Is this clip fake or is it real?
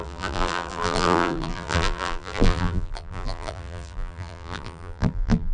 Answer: fake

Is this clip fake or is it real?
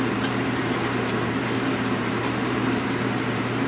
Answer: fake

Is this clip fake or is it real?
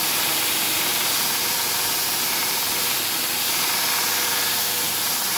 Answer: fake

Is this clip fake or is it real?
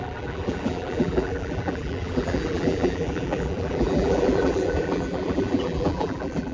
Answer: fake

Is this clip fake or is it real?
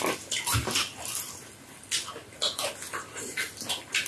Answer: fake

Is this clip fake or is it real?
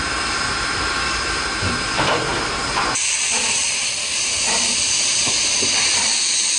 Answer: fake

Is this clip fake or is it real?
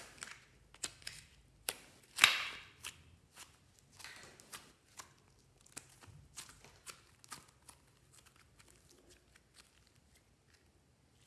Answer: real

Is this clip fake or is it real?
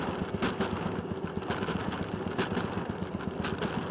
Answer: real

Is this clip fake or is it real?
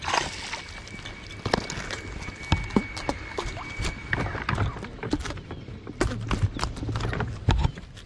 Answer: real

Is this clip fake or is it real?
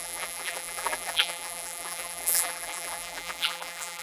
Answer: fake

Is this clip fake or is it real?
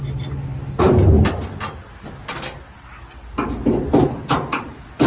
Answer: real